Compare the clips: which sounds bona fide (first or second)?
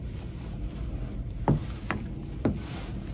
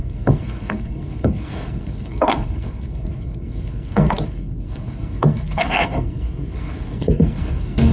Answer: first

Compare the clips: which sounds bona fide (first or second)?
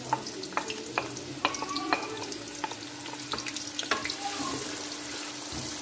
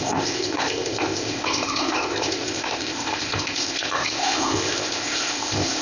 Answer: first